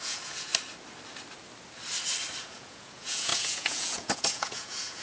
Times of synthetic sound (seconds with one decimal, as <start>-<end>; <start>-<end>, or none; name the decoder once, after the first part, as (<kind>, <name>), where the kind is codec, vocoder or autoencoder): 0.0-0.5 (vocoder, Vocos); 2.4-5.0